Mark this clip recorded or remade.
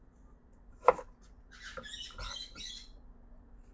recorded